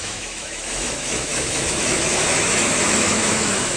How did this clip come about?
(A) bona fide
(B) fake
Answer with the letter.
B